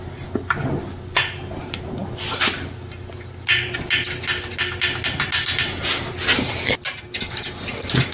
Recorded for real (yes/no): yes